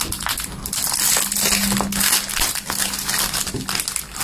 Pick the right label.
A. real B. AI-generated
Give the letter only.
A